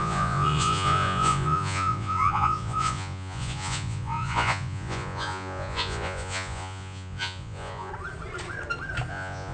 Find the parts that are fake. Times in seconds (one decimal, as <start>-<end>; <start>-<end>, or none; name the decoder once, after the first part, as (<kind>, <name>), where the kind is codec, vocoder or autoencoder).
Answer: 0.0-7.9 (vocoder, Vocos); 9.1-9.5